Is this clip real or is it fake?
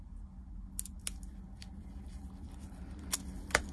real